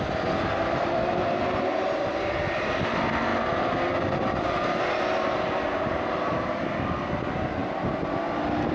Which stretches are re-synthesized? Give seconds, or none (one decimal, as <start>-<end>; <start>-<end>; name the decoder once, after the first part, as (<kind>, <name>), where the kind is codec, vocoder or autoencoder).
none